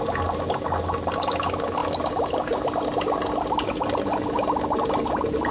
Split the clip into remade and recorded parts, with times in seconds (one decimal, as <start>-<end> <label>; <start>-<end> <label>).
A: 0.0-5.5 recorded